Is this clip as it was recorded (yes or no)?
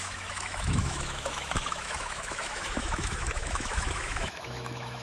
no